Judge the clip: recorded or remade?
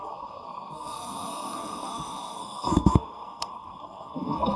remade